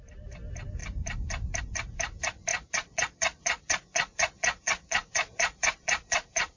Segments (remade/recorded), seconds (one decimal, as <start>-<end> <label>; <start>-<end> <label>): 0.0-2.5 recorded; 2.5-6.6 remade